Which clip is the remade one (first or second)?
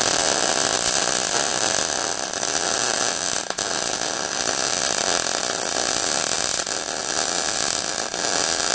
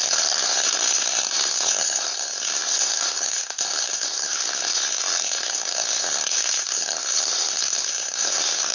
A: second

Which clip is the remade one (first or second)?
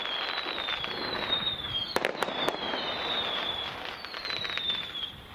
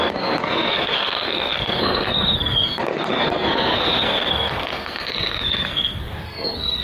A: second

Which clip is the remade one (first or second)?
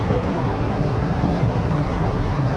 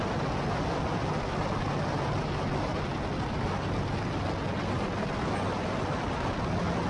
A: first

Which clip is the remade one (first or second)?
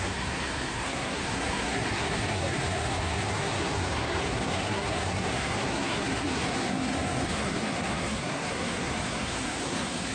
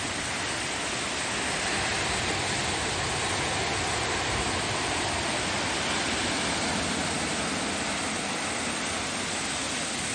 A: first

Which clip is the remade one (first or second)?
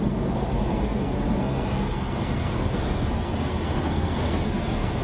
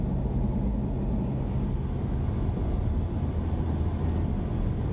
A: first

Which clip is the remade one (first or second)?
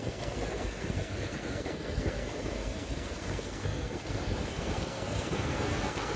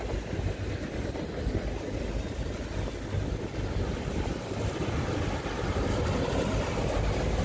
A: first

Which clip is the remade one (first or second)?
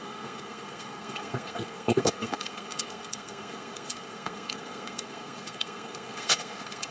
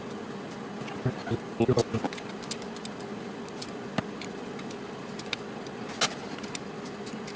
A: first